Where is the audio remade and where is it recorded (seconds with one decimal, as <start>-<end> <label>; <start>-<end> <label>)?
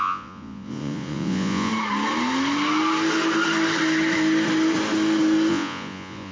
0.0-1.7 remade; 1.7-5.5 recorded; 5.5-6.3 remade